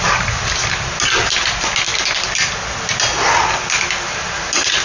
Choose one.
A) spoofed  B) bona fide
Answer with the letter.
B